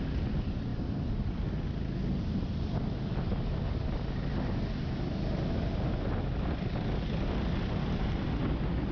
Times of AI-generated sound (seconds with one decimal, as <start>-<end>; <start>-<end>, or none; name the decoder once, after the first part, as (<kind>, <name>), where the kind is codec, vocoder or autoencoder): none